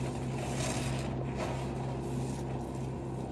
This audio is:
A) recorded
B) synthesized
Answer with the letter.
A